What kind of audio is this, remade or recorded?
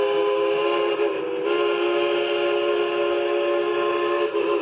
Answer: recorded